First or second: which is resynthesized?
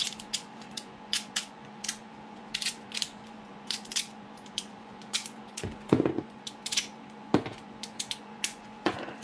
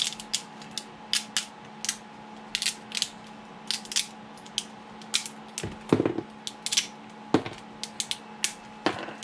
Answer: first